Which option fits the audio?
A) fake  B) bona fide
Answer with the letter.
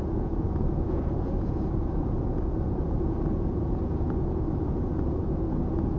A